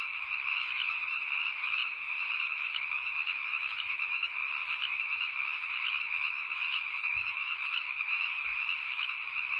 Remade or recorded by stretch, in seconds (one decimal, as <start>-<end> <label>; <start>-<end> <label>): 0.0-4.4 remade; 4.4-5.0 recorded; 5.0-9.6 remade